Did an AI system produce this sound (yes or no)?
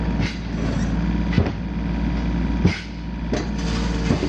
no